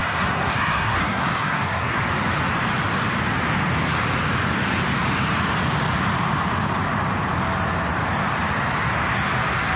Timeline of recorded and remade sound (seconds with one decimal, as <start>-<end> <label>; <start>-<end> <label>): 0.0-2.0 remade; 2.0-9.8 recorded